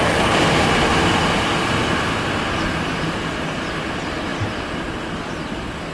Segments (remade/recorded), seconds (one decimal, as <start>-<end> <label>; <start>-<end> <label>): 0.0-5.9 recorded